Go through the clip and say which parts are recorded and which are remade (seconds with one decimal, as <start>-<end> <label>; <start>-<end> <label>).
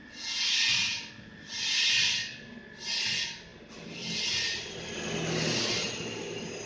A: 0.0-6.7 recorded